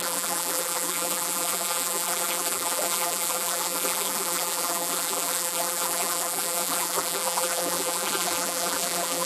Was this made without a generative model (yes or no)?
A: no